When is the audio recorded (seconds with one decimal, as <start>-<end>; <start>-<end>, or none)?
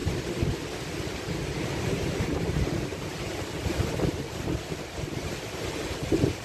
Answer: 0.0-1.6